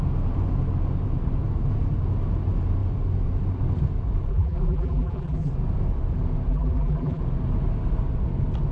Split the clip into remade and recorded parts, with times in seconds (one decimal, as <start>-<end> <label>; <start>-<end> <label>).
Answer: 0.0-4.3 recorded; 4.3-5.5 remade; 5.5-6.5 recorded; 6.5-7.2 remade; 7.2-8.7 recorded